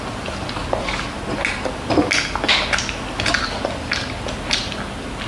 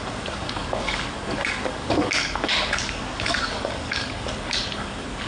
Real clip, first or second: first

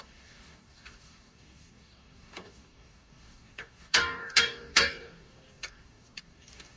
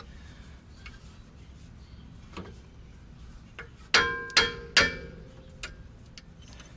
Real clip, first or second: second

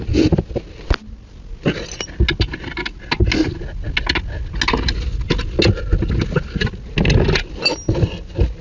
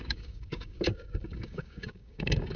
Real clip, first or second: first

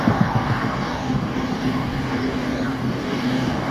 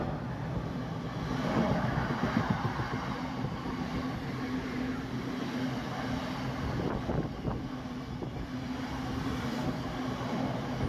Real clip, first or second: second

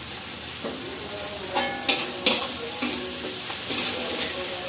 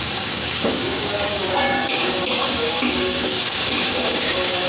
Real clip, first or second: first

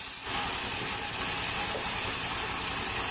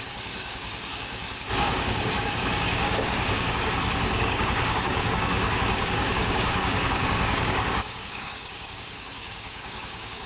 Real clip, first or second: first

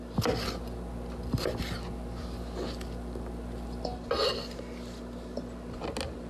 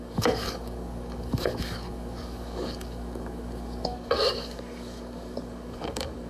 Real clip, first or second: first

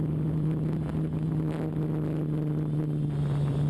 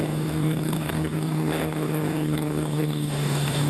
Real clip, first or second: first